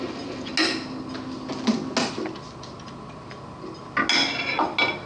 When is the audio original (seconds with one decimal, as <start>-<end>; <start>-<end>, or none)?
0.0-5.1